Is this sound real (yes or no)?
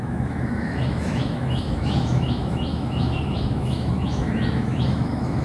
no